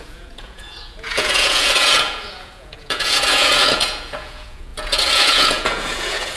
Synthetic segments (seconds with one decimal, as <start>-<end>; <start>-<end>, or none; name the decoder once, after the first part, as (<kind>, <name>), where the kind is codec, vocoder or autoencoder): 0.0-6.4 (vocoder, Vocos)